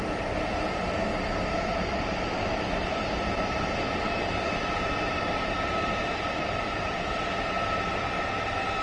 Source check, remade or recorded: recorded